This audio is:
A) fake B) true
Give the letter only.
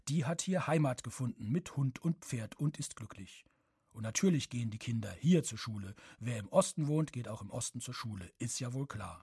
B